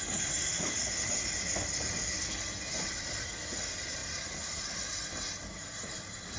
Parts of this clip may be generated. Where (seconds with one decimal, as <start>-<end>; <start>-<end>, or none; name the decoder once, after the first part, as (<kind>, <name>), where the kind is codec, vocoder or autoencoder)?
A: none